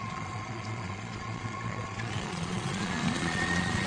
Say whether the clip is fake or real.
fake